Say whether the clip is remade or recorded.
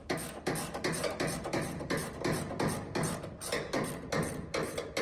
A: recorded